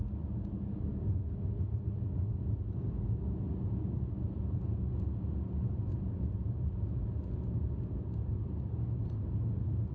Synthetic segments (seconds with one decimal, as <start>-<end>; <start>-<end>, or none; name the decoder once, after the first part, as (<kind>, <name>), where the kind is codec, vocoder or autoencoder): none